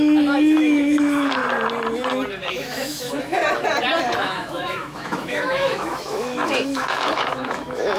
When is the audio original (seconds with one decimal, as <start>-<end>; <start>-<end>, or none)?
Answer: 1.4-2.5; 3.4-4.2